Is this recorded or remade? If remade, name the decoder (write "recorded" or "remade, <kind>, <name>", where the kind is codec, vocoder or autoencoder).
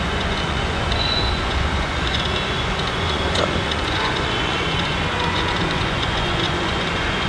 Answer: remade, vocoder, Vocos